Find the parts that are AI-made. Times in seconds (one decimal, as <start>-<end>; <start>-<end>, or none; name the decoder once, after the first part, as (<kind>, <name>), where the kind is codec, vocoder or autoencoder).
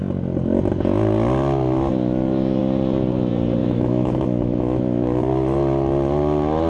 3.6-5.3 (autoencoder, DAC-VAE)